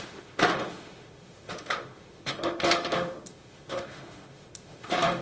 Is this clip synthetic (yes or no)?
yes